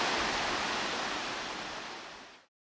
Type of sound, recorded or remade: recorded